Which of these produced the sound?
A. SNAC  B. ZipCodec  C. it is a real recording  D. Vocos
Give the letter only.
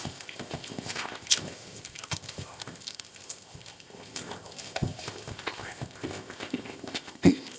B